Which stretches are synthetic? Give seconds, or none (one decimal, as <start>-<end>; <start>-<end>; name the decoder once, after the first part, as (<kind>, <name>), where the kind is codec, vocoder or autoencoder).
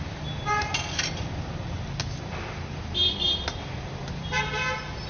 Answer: none